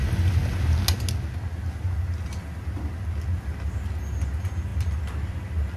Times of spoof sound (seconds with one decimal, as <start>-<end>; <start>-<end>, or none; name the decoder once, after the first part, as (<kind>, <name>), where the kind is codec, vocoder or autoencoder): none